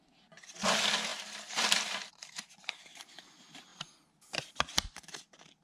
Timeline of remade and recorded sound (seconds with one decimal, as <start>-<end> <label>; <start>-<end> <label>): 0.0-1.1 recorded; 1.1-2.5 remade; 2.5-5.6 recorded